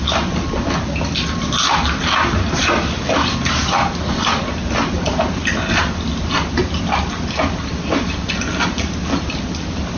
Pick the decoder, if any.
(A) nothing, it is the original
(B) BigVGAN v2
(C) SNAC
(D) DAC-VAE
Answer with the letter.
A